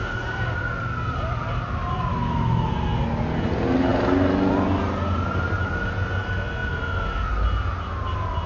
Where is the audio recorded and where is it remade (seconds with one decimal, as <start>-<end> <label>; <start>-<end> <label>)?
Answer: 0.0-2.1 recorded; 2.1-2.7 remade; 2.7-8.5 recorded